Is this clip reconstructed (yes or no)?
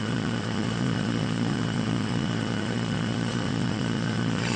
yes